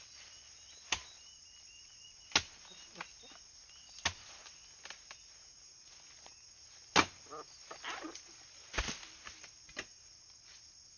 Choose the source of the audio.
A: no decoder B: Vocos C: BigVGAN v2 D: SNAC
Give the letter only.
A